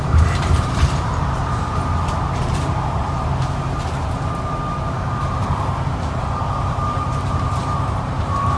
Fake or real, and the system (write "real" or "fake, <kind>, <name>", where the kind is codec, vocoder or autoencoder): fake, vocoder, BigVGAN v2